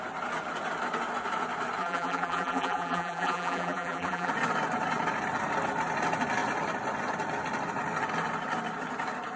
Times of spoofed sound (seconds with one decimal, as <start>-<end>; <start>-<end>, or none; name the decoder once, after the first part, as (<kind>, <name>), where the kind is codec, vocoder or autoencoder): 1.8-4.3 (vocoder, BigVGAN v2)